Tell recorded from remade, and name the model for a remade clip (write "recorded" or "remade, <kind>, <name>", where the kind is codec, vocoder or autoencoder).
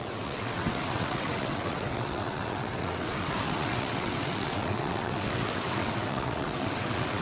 remade, vocoder, WaveNeXt